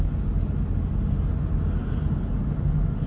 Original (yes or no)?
yes